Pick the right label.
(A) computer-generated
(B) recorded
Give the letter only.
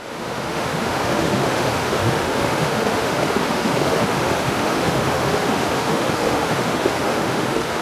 A